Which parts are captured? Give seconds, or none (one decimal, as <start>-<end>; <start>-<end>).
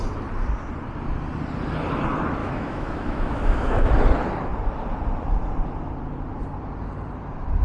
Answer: 0.0-2.4; 3.9-7.6